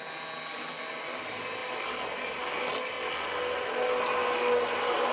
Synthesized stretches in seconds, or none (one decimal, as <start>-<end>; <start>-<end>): none